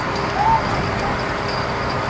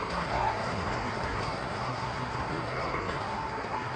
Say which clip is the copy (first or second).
second